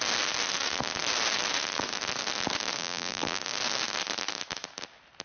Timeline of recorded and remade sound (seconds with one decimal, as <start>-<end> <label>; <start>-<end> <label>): 0.0-2.8 recorded; 2.8-3.4 remade; 3.4-5.2 recorded

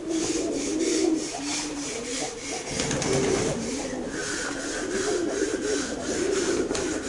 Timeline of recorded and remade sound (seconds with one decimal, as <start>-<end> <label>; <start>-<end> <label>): 0.0-2.1 remade; 2.1-3.3 recorded; 3.3-4.2 remade; 4.2-4.9 recorded; 4.9-7.1 remade